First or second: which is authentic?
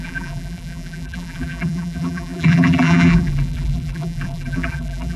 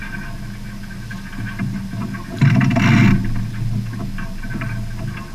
second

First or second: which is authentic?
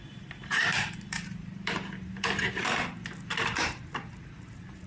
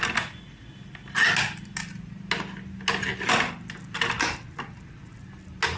second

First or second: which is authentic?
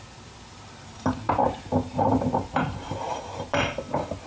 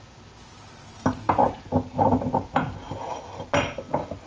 second